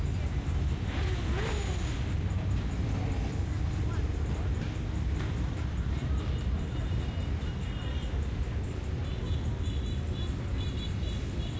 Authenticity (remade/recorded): recorded